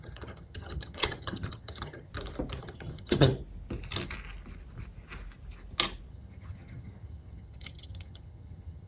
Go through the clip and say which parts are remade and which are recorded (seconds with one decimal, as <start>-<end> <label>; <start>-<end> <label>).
0.0-2.1 remade; 2.1-2.6 recorded; 2.6-3.3 remade; 3.3-6.1 recorded; 6.1-8.9 remade